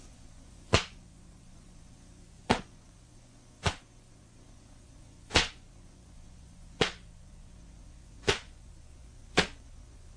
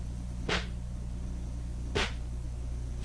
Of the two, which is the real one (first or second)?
second